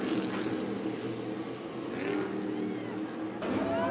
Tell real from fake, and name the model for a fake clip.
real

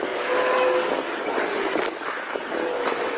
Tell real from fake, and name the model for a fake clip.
fake, codec, DAC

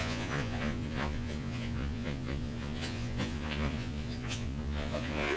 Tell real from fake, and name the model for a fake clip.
fake, vocoder, Vocos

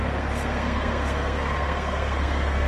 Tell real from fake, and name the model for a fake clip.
fake, codec, SNAC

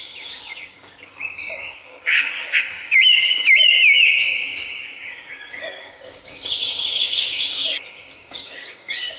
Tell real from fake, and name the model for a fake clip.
fake, codec, DAC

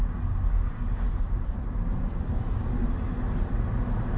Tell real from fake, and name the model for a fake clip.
real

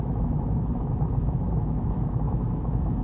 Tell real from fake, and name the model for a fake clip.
fake, autoencoder, DAC-VAE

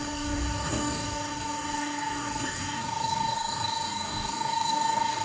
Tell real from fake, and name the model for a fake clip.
fake, codec, DAC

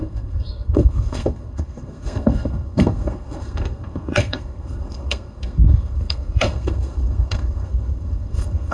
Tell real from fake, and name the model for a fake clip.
fake, codec, SNAC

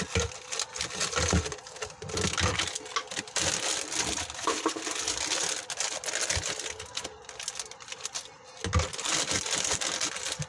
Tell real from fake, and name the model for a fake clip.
real